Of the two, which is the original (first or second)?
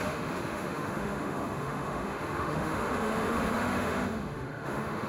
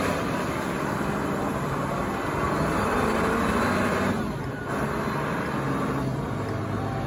second